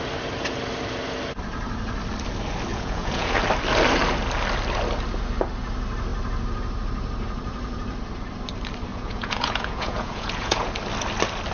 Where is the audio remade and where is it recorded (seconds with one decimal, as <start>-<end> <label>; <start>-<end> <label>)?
0.0-2.7 recorded; 2.7-3.4 remade; 3.4-8.9 recorded; 8.9-10.7 remade; 10.7-11.5 recorded